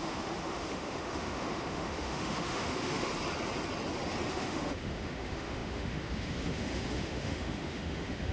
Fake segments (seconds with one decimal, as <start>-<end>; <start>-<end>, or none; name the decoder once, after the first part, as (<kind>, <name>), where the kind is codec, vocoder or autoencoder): 0.0-3.1 (autoencoder, DAC-VAE); 4.3-8.3